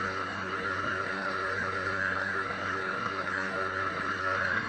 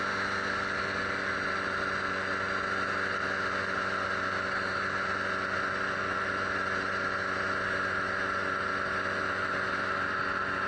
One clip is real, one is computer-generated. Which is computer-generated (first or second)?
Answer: first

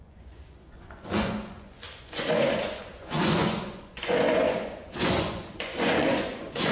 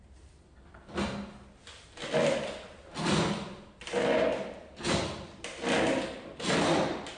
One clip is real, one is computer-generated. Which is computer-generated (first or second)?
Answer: first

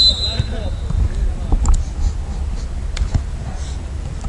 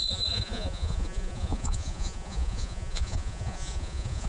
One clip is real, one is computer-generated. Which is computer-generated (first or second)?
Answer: second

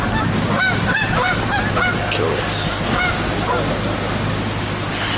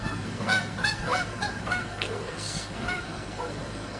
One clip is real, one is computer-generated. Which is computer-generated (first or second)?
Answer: second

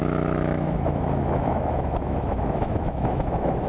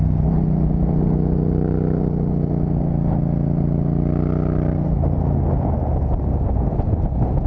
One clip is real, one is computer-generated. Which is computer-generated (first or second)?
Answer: first